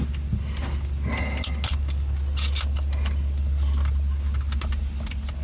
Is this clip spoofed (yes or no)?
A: no